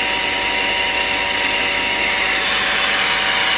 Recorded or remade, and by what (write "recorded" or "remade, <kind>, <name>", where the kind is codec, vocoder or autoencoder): recorded